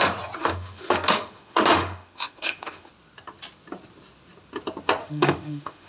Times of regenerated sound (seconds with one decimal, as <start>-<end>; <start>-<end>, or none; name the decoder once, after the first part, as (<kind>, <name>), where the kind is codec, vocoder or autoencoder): 0.4-2.9 (autoencoder, DAC-VAE); 5.0-5.9